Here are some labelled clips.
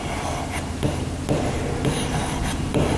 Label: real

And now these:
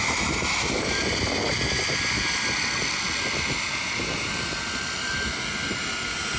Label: real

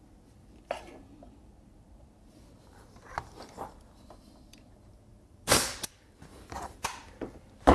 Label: fake